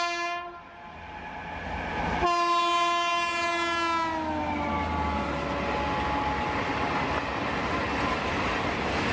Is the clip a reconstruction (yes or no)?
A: no